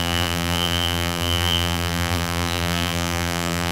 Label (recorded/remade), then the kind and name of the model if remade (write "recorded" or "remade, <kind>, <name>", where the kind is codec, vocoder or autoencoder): remade, vocoder, BigVGAN v2